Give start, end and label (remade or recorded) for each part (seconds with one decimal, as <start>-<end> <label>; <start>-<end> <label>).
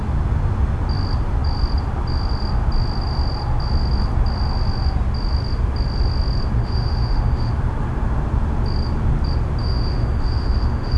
0.0-6.6 recorded; 6.6-7.5 remade; 7.5-9.6 recorded; 9.6-11.0 remade